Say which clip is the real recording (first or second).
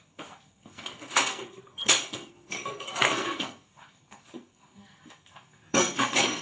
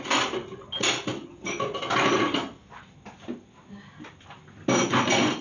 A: second